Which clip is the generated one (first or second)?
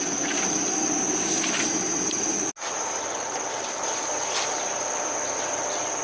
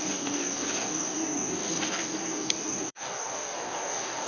second